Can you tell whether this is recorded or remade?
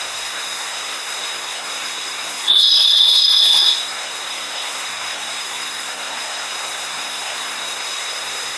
remade